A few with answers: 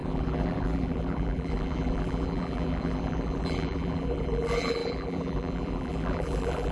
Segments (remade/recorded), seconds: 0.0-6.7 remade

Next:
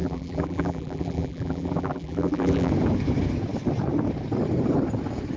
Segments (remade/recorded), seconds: 0.0-2.7 remade; 2.7-5.4 recorded